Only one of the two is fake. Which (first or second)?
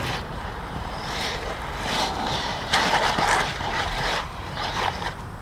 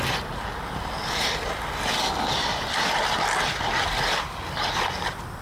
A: first